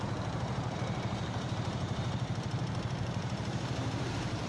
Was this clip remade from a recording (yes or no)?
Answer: yes